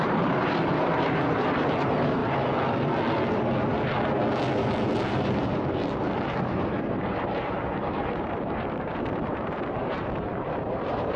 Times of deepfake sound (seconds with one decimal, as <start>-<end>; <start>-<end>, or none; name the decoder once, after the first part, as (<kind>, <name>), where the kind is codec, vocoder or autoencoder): 0.0-2.2 (vocoder, BigVGAN v2); 5.1-11.2